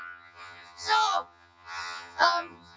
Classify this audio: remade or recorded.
remade